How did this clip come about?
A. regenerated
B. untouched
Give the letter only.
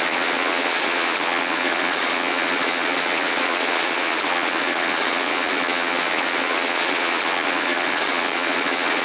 A